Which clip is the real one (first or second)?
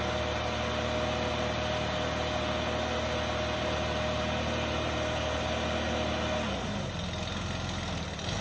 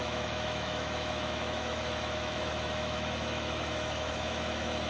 first